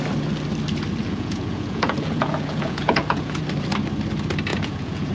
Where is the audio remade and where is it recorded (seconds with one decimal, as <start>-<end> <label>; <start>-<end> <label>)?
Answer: 0.0-1.0 recorded; 1.0-3.4 remade; 3.4-4.5 recorded; 4.5-5.1 remade